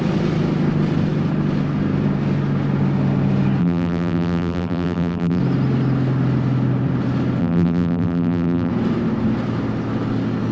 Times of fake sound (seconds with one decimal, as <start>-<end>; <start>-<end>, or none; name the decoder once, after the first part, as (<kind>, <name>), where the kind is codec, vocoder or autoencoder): 3.6-5.4 (vocoder, BigVGAN v2); 7.4-8.7